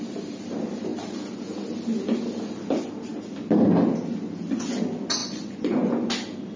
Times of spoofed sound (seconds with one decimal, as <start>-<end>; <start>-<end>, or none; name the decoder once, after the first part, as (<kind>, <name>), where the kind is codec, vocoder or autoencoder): 5.2-6.1 (vocoder, Vocos)